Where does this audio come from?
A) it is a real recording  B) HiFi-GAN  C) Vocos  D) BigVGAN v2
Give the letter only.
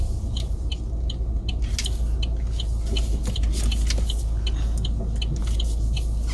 A